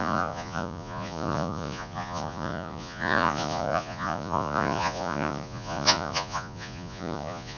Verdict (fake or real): fake